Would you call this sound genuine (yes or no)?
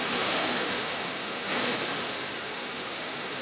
no